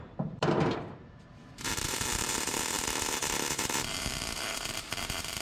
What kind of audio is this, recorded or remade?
remade